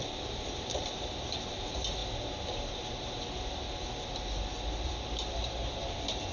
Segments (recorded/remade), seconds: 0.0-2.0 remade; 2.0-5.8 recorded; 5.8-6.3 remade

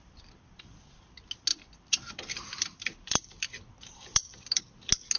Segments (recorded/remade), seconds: 0.0-1.5 recorded; 1.5-4.6 remade; 4.6-5.2 recorded

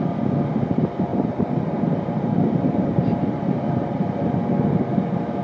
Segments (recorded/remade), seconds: 0.0-1.1 recorded; 1.1-4.3 remade; 4.3-5.4 recorded

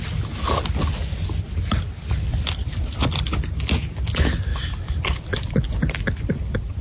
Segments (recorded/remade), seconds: 0.0-6.8 recorded

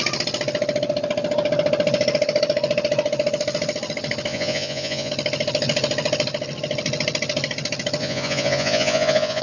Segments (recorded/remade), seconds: 0.0-4.3 recorded; 4.3-5.1 remade; 5.1-8.0 recorded; 8.0-9.4 remade